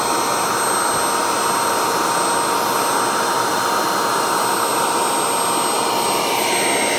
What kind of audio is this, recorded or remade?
recorded